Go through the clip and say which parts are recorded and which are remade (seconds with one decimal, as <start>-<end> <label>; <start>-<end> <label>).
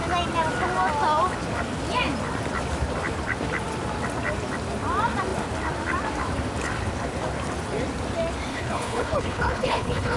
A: 0.0-8.5 recorded; 8.5-10.2 remade